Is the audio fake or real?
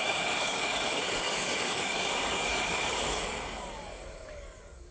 fake